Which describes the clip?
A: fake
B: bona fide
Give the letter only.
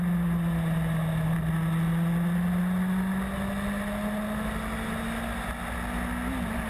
B